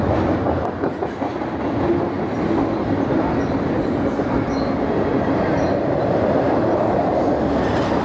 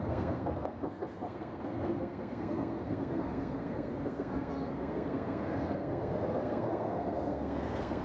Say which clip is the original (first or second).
first